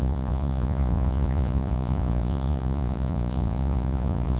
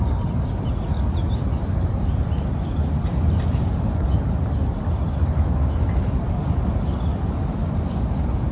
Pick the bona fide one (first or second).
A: second